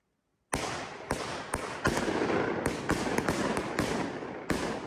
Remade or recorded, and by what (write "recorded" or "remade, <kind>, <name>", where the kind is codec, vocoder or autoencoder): recorded